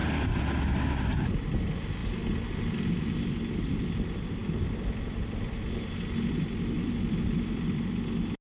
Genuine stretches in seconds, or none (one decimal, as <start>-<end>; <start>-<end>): 0.0-4.4; 8.0-8.4